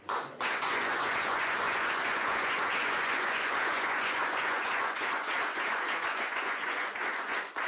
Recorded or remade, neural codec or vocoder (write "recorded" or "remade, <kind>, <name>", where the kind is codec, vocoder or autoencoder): remade, vocoder, Vocos